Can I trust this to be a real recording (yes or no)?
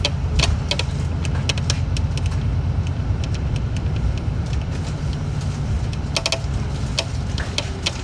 yes